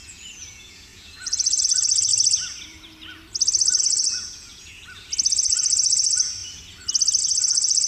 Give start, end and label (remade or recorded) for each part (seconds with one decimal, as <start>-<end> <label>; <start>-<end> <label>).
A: 0.0-2.1 remade; 2.1-3.8 recorded; 3.8-4.8 remade; 4.8-5.3 recorded; 5.3-6.4 remade; 6.4-7.2 recorded; 7.2-7.9 remade